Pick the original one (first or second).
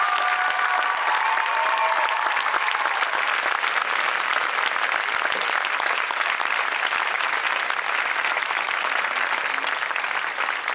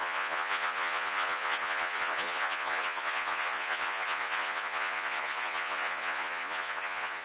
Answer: first